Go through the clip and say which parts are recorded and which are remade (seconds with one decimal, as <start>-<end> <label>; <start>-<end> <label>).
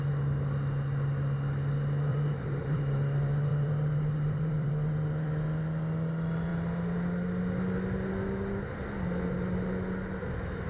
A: 0.0-2.1 recorded; 2.1-2.8 remade; 2.8-3.5 recorded; 3.5-4.7 remade; 4.7-10.7 recorded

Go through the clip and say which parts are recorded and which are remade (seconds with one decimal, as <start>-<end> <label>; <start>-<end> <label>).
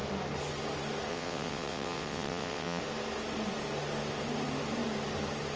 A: 0.0-1.1 recorded; 1.1-2.8 remade; 2.8-5.6 recorded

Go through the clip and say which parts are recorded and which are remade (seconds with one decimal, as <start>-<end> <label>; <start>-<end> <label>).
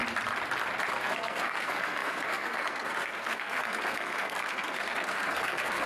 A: 0.0-0.9 recorded; 0.9-5.9 remade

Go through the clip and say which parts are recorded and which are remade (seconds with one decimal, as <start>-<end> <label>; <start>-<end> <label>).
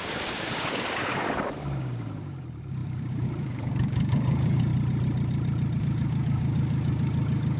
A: 0.0-4.7 remade; 4.7-5.8 recorded; 5.8-7.6 remade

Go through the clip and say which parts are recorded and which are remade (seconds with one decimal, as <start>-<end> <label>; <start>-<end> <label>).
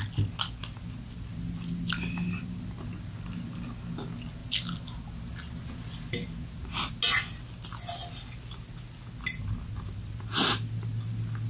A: 0.0-11.5 recorded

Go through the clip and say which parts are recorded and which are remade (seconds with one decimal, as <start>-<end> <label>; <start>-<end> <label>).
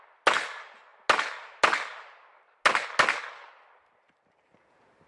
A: 0.0-5.1 recorded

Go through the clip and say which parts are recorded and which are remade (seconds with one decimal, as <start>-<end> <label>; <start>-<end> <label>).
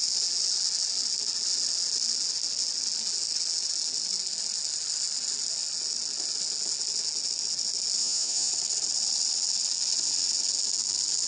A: 0.0-8.0 recorded; 8.0-8.5 remade; 8.5-11.3 recorded